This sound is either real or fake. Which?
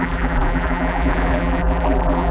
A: fake